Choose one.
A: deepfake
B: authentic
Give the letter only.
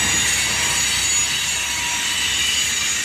B